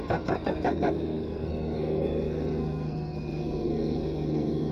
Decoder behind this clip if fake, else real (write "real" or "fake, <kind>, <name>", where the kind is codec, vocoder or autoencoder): fake, codec, SNAC